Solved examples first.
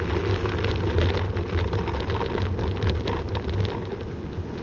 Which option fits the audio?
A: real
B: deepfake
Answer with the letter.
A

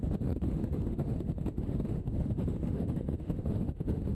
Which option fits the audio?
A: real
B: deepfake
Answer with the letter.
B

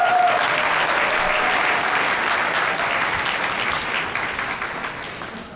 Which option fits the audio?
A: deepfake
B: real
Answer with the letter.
B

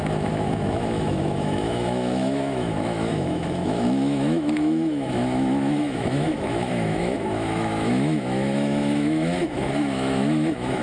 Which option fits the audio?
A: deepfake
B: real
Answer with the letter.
A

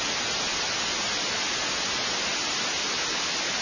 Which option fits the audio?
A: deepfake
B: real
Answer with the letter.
B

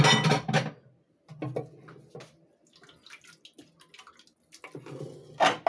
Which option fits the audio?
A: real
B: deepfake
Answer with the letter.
A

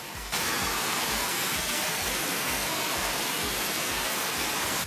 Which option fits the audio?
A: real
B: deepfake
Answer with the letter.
B